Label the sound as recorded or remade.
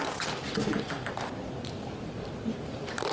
recorded